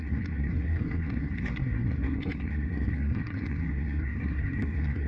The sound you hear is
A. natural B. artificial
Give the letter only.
B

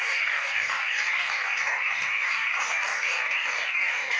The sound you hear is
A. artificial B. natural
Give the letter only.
A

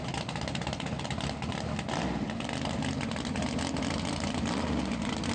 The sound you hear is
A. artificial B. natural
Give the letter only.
B